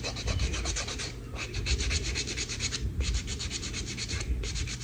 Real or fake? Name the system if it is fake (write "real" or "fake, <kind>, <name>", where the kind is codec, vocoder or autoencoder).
fake, vocoder, BigVGAN v2